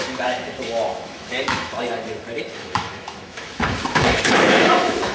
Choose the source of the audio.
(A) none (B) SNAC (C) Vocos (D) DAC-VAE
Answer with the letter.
D